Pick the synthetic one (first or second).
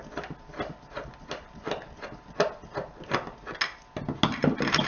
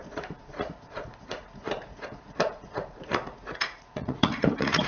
second